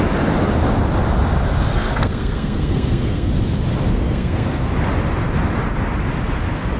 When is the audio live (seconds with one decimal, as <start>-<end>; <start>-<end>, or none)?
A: 0.0-1.7; 3.3-3.9; 4.7-6.8